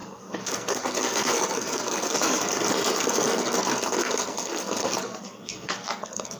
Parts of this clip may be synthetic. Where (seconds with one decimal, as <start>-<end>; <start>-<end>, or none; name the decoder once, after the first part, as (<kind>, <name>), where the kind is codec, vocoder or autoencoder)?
0.0-6.4 (codec, SNAC)